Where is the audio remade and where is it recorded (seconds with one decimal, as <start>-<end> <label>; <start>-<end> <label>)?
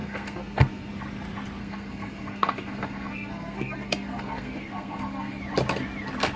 0.0-0.9 remade; 0.9-1.6 recorded; 1.6-5.4 remade; 5.4-6.4 recorded